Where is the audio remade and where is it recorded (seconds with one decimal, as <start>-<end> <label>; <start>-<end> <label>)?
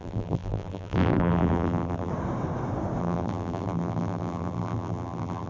0.0-2.1 remade; 2.1-3.0 recorded; 3.0-5.5 remade